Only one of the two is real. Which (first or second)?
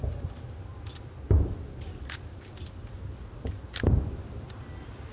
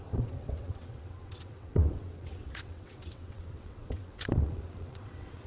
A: first